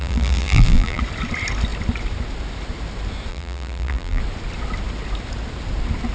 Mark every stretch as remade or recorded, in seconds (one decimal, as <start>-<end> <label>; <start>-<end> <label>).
0.0-1.0 remade; 1.0-3.3 recorded; 3.3-4.2 remade; 4.2-6.1 recorded